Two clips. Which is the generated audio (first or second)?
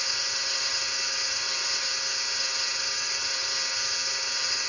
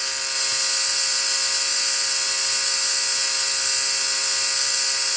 first